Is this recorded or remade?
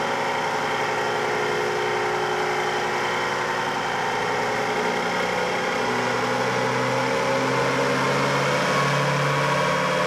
recorded